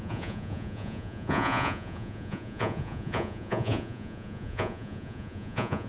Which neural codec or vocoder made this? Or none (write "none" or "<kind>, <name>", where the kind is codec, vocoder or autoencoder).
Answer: vocoder, Vocos